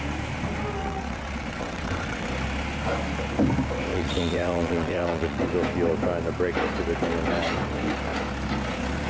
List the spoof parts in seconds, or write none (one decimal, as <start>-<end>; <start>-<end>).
0.8-2.3; 3.9-5.4